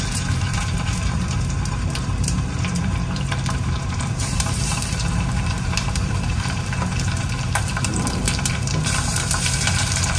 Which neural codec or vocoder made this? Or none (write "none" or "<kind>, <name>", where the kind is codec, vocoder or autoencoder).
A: vocoder, BigVGAN v2